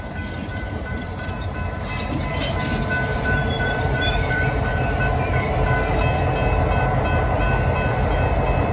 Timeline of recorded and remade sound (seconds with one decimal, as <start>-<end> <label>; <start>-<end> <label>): 0.0-0.5 recorded; 0.5-2.3 remade; 2.3-3.1 recorded; 3.1-5.5 remade; 5.5-8.7 recorded

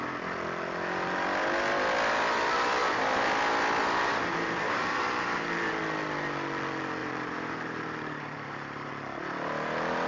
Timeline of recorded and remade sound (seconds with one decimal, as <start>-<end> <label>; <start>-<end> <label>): 0.0-2.8 recorded; 2.8-3.3 remade; 3.3-3.8 recorded; 3.8-5.7 remade; 5.7-7.0 recorded; 7.0-8.9 remade; 8.9-10.1 recorded

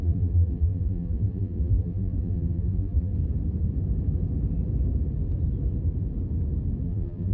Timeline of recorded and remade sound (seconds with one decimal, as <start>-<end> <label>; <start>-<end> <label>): 0.0-3.1 remade; 3.1-6.8 recorded; 6.8-7.3 remade